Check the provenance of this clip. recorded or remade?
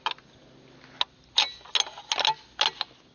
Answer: recorded